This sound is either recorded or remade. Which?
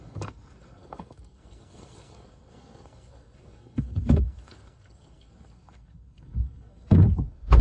remade